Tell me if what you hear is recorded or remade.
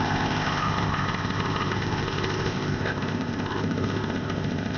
remade